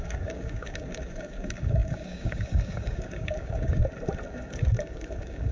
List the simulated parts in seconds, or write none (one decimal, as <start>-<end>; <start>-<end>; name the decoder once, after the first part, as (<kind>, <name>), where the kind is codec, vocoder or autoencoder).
0.0-3.8 (codec, DAC); 4.3-5.5